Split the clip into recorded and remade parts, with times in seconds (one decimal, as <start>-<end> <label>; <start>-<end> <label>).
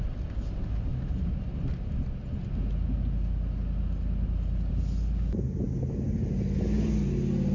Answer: 0.0-7.5 recorded